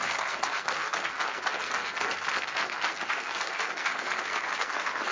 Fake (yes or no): yes